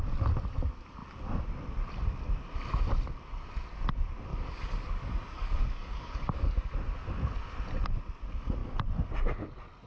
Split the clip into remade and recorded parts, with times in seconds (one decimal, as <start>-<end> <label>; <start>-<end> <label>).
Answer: 0.0-4.3 recorded; 4.3-6.7 remade; 6.7-9.9 recorded